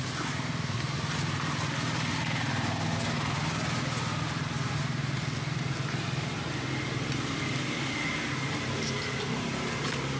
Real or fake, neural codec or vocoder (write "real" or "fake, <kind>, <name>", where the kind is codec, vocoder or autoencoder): real